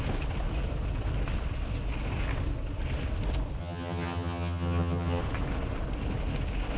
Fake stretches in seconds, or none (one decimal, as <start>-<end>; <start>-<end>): 3.6-5.2